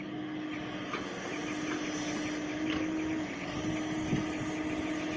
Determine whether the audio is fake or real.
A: real